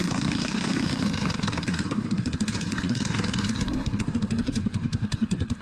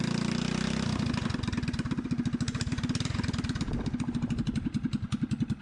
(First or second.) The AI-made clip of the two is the first